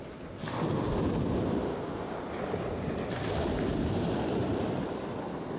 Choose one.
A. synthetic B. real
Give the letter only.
B